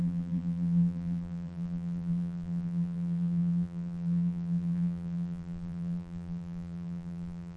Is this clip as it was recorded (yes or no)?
no